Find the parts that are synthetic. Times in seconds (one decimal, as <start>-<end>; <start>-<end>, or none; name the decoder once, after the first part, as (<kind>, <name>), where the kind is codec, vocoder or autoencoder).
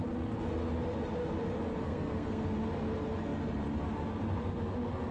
1.8-2.5 (codec, SNAC)